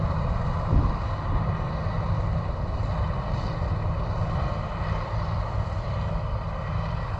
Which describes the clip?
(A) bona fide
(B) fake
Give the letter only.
A